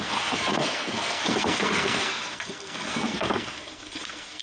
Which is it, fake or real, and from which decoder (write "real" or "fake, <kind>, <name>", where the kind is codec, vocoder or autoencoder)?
fake, codec, SNAC